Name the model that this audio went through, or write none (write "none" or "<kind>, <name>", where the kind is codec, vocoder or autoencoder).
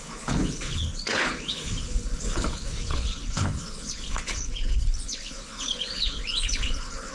codec, HILCodec